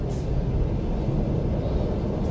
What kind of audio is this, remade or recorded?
recorded